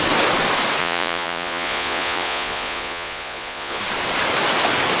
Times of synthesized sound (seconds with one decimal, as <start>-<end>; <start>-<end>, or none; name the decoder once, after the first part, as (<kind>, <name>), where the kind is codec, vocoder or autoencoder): 0.8-3.8 (vocoder, Vocos)